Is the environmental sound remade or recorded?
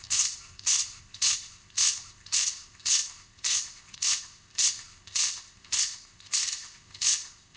remade